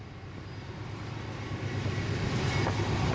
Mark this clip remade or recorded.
recorded